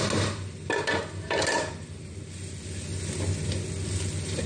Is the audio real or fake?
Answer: real